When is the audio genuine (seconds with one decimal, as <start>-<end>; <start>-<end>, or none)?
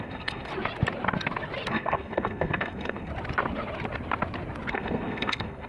0.5-1.7; 3.1-4.7